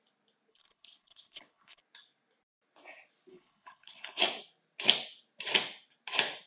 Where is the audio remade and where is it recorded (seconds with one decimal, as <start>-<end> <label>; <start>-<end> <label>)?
0.0-0.5 recorded; 0.5-1.8 remade; 1.8-3.3 recorded; 3.3-4.2 remade; 4.2-6.5 recorded